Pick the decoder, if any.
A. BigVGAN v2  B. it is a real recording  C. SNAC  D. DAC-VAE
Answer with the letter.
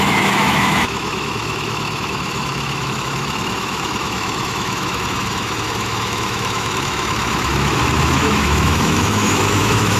D